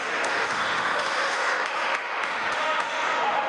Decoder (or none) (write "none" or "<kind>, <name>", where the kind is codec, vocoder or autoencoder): autoencoder, DAC-VAE